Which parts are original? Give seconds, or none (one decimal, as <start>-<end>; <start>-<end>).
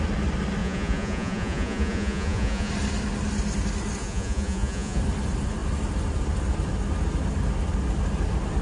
0.0-0.6; 2.7-4.0; 5.0-8.6